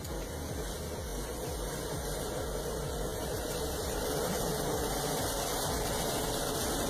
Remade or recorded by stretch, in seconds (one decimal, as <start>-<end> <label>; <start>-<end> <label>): 0.0-3.1 recorded; 3.1-4.4 remade; 4.4-6.9 recorded